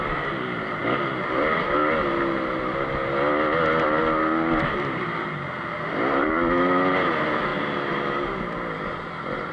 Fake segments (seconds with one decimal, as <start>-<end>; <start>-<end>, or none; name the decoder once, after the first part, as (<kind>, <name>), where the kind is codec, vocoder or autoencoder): none